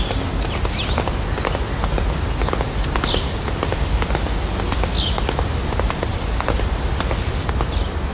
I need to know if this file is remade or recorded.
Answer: recorded